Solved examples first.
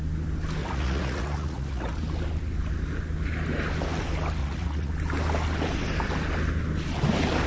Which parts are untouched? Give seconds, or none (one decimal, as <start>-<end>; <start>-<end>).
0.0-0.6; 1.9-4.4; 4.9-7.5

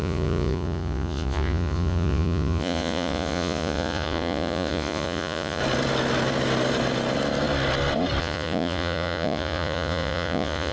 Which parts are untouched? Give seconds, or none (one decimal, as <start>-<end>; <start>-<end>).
5.6-8.2

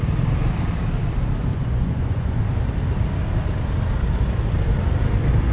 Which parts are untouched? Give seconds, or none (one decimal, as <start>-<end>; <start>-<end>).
0.0-1.5; 2.4-5.5

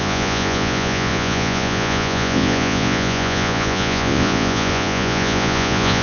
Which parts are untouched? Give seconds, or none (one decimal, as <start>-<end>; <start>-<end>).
none

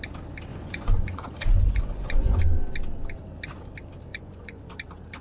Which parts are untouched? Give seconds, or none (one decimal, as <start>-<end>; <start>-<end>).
0.0-0.5; 2.4-4.1; 4.7-5.2

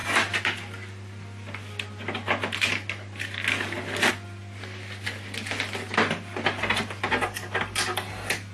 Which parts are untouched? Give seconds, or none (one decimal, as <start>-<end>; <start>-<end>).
0.0-8.5